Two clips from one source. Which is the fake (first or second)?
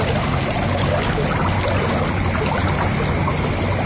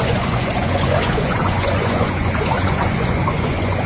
second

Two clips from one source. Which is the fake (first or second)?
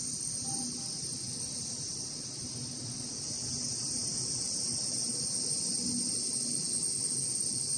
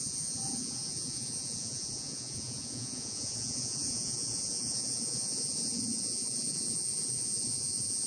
second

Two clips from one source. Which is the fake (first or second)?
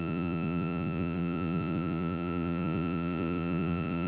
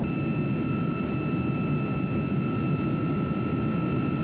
first